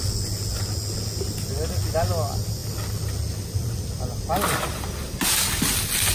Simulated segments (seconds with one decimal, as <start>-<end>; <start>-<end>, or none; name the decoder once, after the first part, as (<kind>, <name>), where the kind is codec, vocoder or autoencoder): none